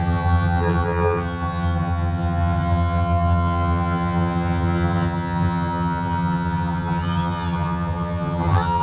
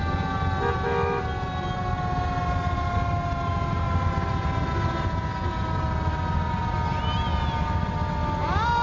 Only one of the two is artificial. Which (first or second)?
first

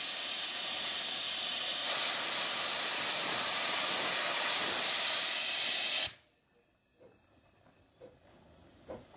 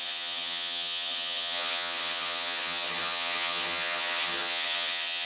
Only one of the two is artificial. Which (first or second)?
second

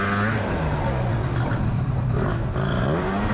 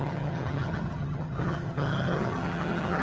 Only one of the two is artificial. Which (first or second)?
second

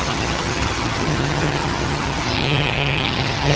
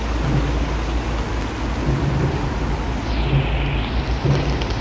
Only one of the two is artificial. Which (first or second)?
first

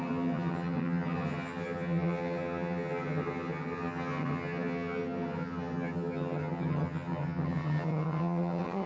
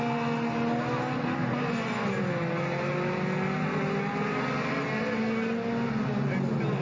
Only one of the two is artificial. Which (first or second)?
first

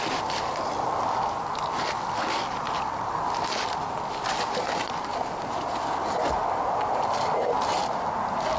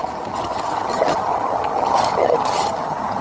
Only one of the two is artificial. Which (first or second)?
second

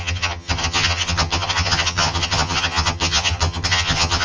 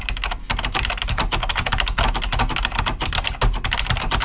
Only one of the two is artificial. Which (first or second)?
first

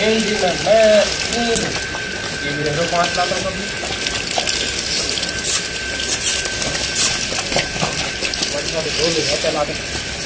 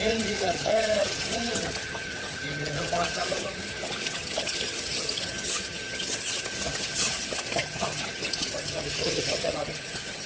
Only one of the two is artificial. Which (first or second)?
second